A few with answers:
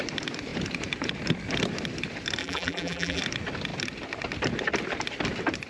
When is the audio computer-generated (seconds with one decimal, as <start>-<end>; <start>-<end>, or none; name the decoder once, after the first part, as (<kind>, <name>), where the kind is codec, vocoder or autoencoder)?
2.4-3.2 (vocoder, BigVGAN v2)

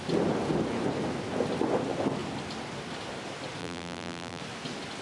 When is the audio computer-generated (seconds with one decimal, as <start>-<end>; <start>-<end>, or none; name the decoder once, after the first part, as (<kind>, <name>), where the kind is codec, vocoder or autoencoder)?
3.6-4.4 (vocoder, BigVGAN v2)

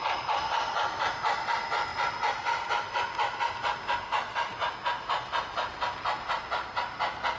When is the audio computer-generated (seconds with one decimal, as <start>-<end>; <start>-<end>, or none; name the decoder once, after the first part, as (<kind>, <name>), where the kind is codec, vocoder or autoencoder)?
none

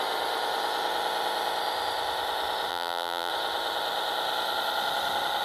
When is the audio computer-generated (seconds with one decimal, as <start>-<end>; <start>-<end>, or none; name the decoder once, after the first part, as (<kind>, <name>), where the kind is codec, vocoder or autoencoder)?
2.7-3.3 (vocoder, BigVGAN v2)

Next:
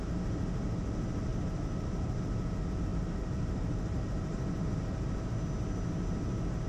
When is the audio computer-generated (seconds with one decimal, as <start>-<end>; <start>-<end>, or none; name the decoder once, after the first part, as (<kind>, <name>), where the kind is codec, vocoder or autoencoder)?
1.3-2.2 (vocoder, BigVGAN v2); 2.9-5.3